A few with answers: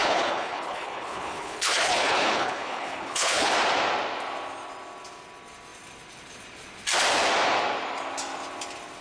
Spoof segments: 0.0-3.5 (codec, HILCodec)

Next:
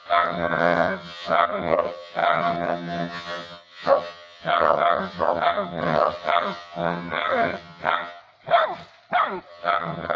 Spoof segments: 0.0-8.2 (vocoder, HiFi-GAN); 9.5-10.2

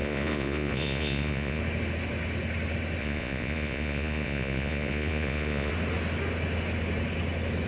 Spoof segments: 0.0-1.6 (vocoder, Vocos); 3.0-5.7

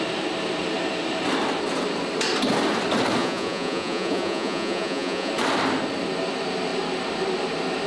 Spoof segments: 3.2-5.3 (vocoder, Vocos)

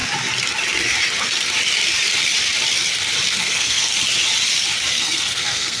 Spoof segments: 3.3-3.9 (codec, SNAC); 4.9-5.8

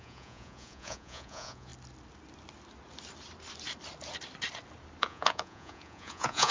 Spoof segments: 0.0-1.7 (vocoder, Vocos); 5.0-6.5

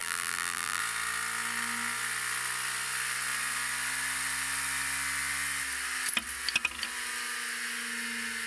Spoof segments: 0.0-0.8 (vocoder, BigVGAN v2)

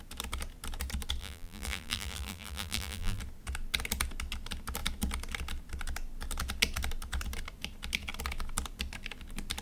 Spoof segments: 1.2-3.2 (vocoder, BigVGAN v2)